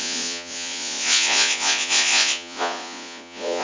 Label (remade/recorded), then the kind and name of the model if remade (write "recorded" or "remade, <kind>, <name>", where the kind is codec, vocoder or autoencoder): remade, vocoder, Vocos